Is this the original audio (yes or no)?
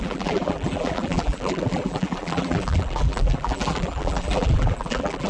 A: no